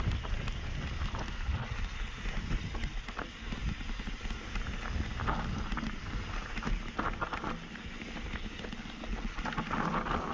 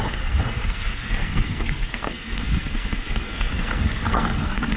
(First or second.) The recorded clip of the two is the first